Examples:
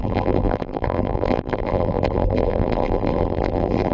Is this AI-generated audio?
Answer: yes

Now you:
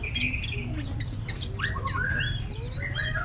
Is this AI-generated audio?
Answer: no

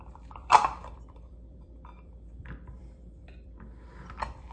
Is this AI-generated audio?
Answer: yes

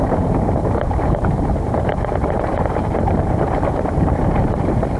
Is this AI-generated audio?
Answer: yes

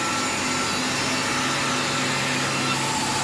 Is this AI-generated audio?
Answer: no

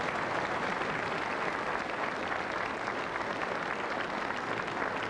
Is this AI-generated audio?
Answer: no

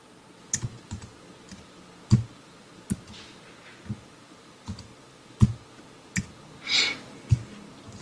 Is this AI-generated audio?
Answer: no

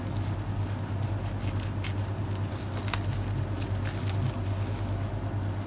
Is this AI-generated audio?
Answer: no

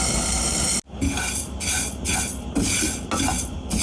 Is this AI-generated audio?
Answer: no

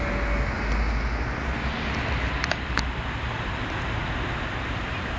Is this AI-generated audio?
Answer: no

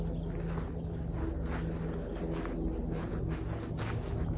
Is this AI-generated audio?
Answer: no